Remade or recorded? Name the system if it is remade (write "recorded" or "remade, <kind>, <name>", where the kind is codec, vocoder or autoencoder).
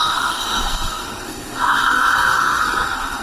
remade, codec, SNAC